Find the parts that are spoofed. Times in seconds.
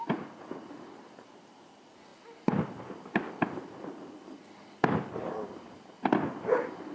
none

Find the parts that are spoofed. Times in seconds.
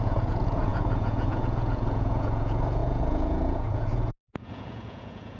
0.0-5.4 (vocoder, Vocos)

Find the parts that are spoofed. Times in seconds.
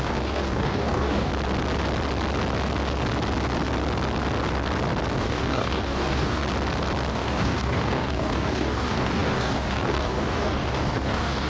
0.0-1.3 (codec, DAC); 5.2-6.4; 7.1-11.5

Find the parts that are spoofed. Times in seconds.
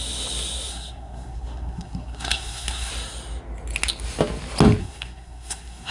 0.7-2.9 (codec, SNAC); 4.8-5.9